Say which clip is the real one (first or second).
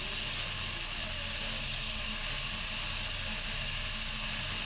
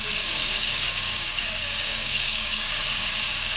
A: first